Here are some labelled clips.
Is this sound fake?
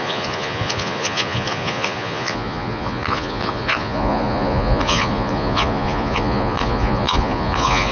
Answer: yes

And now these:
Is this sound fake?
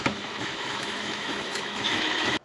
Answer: yes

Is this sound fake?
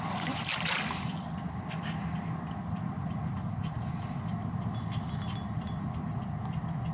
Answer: no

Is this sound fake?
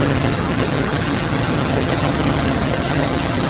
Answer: yes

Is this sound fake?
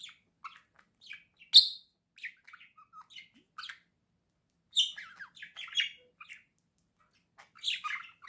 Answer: no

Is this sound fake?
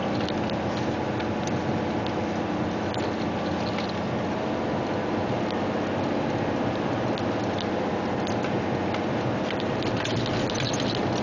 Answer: no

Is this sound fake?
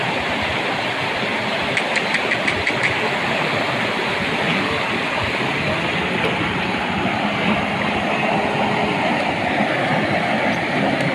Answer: no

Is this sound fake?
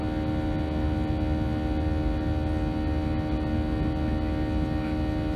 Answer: no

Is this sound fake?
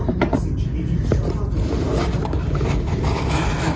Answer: no